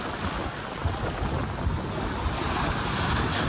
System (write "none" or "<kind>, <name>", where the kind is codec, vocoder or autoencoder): none